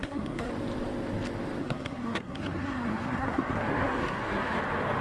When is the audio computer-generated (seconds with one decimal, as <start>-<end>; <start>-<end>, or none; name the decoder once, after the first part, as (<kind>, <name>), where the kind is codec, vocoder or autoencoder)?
0.0-0.5 (codec, SNAC); 1.6-4.6